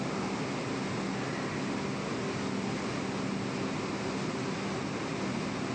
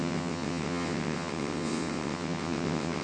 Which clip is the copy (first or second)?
second